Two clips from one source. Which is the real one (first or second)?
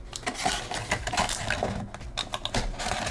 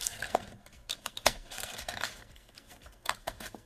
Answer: first